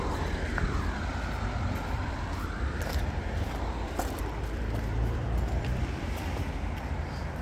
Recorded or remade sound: remade